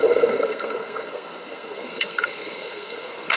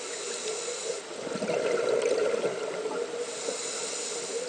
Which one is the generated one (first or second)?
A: first